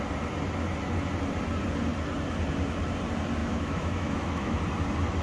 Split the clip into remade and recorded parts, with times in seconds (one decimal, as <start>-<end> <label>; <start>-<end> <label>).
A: 0.0-3.4 recorded; 3.4-4.6 remade; 4.6-5.2 recorded